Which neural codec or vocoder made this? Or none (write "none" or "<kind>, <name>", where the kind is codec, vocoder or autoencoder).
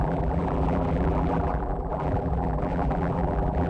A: vocoder, BigVGAN v2